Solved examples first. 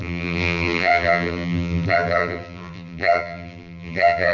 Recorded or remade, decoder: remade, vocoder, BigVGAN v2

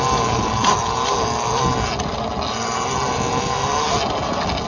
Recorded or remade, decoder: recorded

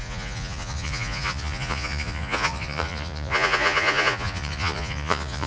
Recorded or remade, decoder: remade, vocoder, Vocos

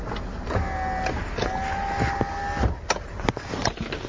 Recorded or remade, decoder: recorded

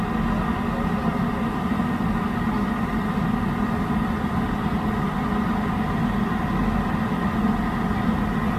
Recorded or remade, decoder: recorded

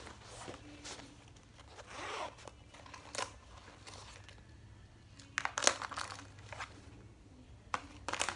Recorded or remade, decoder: recorded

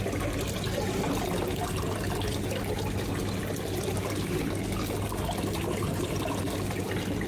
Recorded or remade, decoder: recorded